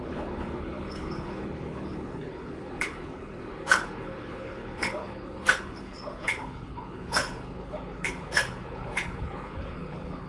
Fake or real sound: fake